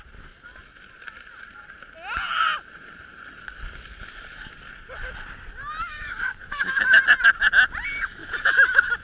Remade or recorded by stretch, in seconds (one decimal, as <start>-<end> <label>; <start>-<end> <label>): 0.0-5.8 recorded; 5.8-7.0 remade; 7.0-8.2 recorded; 8.2-9.0 remade